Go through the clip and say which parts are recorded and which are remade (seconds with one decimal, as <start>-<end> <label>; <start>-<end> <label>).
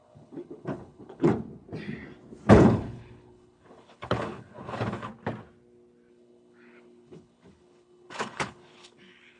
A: 0.0-1.3 remade; 1.3-2.5 recorded; 2.5-5.1 remade; 5.1-6.1 recorded; 6.1-9.4 remade